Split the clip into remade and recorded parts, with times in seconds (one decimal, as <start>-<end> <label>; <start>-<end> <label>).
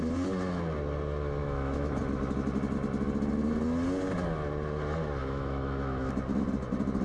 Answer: 0.0-1.4 recorded; 1.4-2.0 remade; 2.0-5.2 recorded; 5.2-6.1 remade; 6.1-7.0 recorded